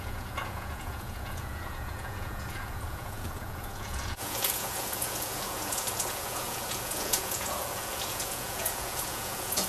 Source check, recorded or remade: remade